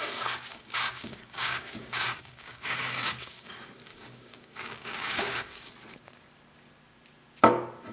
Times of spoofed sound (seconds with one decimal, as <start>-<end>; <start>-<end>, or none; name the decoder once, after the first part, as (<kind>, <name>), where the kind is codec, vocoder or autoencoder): 0.5-3.5 (codec, DAC); 3.9-5.7